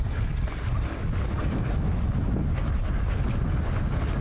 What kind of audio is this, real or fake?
real